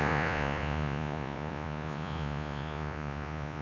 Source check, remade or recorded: remade